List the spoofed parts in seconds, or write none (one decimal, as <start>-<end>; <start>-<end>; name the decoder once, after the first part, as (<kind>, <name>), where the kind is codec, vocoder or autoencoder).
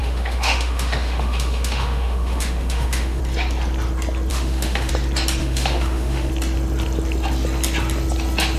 0.0-3.2 (autoencoder, DAC-VAE); 4.3-4.9; 5.4-6.3